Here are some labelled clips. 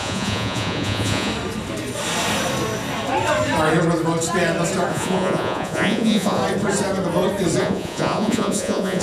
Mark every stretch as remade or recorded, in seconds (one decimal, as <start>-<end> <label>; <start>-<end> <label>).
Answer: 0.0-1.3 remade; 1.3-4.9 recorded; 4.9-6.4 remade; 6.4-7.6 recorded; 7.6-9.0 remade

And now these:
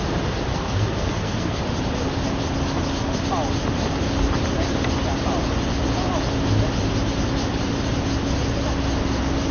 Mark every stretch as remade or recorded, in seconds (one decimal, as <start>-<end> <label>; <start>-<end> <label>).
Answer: 0.0-0.5 recorded; 0.5-1.6 remade; 1.6-9.5 recorded

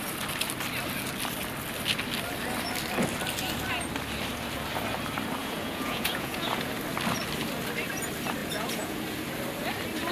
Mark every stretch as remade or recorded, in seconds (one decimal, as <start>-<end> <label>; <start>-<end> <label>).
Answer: 0.0-5.4 recorded; 5.4-6.7 remade; 6.7-8.4 recorded; 8.4-9.0 remade; 9.0-10.1 recorded

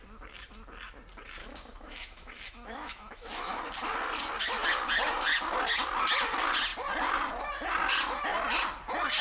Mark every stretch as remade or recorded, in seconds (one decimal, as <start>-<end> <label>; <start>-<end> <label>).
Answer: 0.0-1.4 recorded; 1.4-3.6 remade; 3.6-9.2 recorded

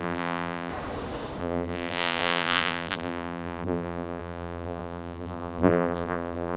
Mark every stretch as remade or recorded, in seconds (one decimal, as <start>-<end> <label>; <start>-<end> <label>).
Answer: 0.0-0.7 remade; 0.7-1.4 recorded; 1.4-6.6 remade

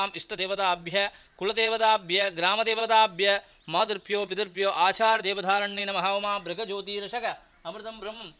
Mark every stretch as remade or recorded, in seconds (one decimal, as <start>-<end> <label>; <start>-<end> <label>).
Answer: 0.0-2.8 remade; 2.8-3.8 recorded; 3.8-5.8 remade; 5.8-8.0 recorded; 8.0-8.4 remade